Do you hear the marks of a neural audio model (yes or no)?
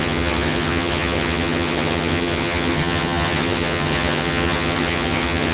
yes